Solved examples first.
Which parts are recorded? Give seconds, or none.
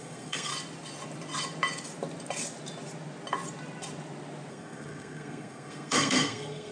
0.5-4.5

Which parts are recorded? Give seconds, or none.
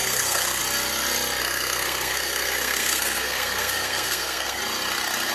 0.6-1.4; 4.6-5.3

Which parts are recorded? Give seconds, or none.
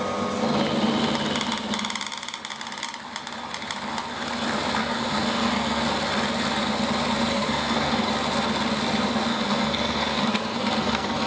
0.0-4.8; 5.8-7.3; 8.1-9.3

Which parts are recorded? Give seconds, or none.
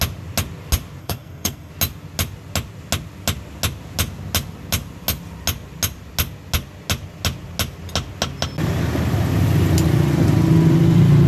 0.0-1.0; 1.7-11.3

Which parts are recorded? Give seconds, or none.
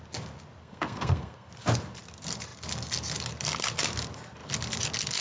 0.0-0.6; 1.5-5.2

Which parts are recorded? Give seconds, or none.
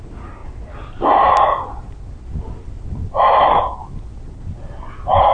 0.0-5.3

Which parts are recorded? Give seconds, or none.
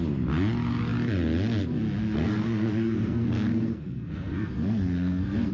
0.0-2.0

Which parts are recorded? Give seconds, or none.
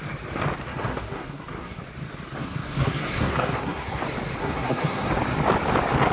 0.0-0.7; 1.8-2.4; 4.0-4.4; 5.1-6.1